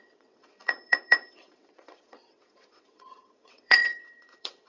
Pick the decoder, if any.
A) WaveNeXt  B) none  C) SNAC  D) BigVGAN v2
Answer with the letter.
A